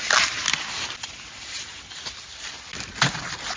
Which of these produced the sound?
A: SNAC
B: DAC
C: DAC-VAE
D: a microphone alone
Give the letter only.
D